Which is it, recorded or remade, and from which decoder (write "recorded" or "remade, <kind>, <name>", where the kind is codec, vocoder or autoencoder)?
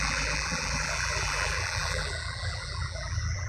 remade, vocoder, BigVGAN v2